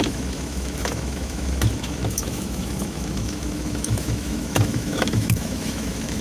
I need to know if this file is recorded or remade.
remade